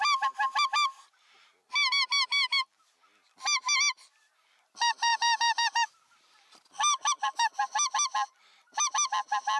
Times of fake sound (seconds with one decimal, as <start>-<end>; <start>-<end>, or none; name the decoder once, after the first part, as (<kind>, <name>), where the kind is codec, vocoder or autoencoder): none